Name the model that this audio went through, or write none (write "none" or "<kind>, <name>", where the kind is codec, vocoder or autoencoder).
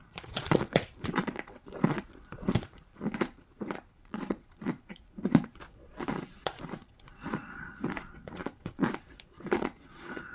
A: vocoder, Vocos